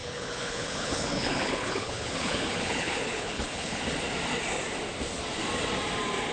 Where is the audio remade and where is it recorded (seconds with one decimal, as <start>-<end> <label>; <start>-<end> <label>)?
0.0-3.8 remade; 3.8-6.3 recorded

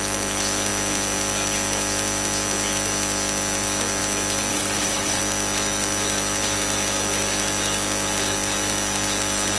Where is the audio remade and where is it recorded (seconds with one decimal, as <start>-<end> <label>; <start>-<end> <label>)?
0.0-4.5 recorded; 4.5-5.2 remade; 5.2-9.6 recorded

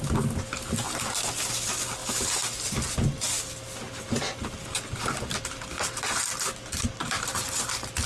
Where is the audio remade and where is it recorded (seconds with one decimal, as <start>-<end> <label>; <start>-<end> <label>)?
0.0-8.1 recorded

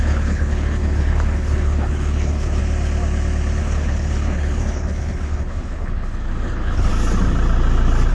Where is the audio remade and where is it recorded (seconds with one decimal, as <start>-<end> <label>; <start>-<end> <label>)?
0.0-2.6 remade; 2.6-3.6 recorded; 3.6-6.9 remade; 6.9-8.1 recorded

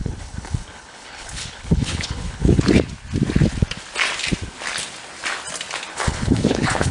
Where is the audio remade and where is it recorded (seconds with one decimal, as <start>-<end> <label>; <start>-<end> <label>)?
0.0-2.6 remade; 2.6-5.9 recorded; 5.9-6.9 remade

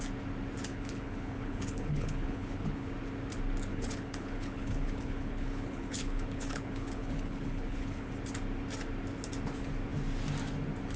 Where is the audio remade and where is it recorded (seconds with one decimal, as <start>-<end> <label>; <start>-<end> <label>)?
0.0-0.7 recorded; 0.7-2.9 remade; 2.9-3.7 recorded; 3.7-8.1 remade; 8.1-11.0 recorded

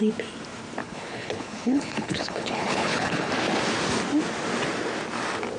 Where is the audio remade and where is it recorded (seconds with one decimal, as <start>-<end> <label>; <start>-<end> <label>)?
0.0-0.8 recorded; 0.8-3.3 remade; 3.3-5.6 recorded